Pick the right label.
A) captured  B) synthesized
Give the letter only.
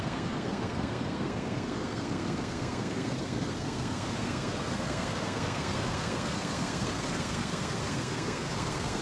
B